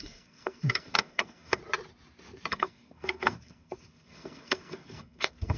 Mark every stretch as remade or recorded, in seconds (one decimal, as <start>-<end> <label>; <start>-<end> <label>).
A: 0.0-1.6 remade; 1.6-2.5 recorded; 2.5-5.6 remade